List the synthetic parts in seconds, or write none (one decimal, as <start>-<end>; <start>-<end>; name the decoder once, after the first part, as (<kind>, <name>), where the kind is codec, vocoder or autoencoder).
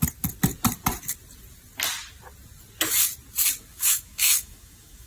3.7-5.1 (autoencoder, DAC-VAE)